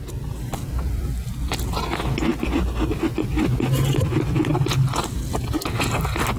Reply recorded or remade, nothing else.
recorded